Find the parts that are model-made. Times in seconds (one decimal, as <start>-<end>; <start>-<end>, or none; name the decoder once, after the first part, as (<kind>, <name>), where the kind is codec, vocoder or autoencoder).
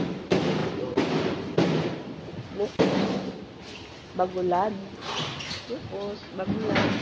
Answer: 4.8-5.6 (vocoder, BigVGAN v2)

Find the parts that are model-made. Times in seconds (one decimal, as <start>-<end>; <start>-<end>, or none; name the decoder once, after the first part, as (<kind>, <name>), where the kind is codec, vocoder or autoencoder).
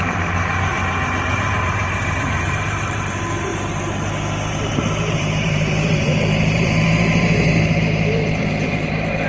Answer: 0.0-0.7 (vocoder, BigVGAN v2); 1.3-3.5; 4.7-9.3